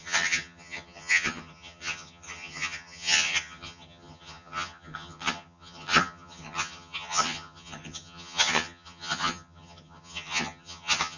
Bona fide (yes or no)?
no